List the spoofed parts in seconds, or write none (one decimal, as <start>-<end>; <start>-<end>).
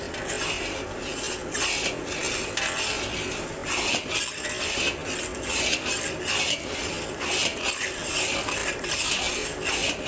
none